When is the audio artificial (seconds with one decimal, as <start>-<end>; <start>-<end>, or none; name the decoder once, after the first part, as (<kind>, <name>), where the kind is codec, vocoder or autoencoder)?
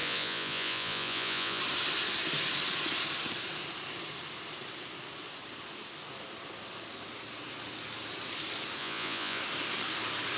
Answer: 0.0-1.6 (vocoder, Vocos); 8.8-9.4